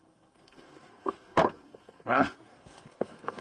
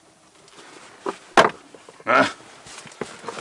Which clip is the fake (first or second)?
first